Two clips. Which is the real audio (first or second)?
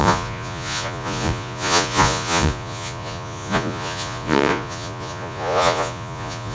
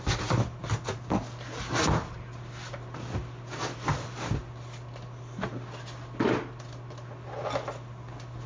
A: second